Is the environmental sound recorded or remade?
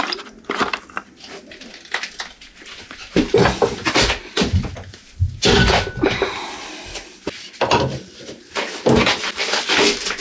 recorded